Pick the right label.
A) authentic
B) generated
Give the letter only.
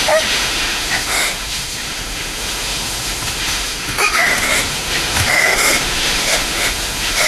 B